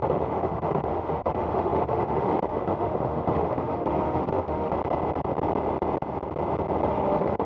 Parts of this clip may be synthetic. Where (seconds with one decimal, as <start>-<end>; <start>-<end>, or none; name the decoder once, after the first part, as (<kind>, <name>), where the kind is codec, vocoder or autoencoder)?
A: 0.0-4.7 (autoencoder, DAC-VAE); 6.9-7.5